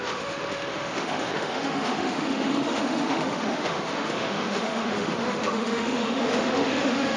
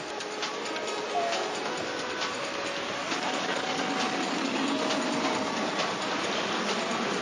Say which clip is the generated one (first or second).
first